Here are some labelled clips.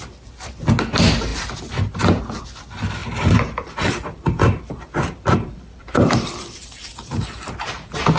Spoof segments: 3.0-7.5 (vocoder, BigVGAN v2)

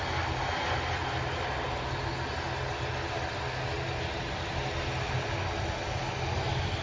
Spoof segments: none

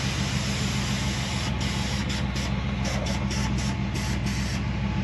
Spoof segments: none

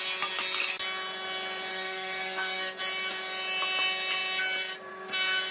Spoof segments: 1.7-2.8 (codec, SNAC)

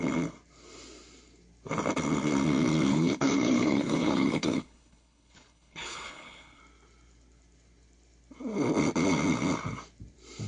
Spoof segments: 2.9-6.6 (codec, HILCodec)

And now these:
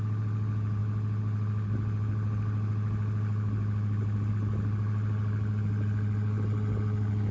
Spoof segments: none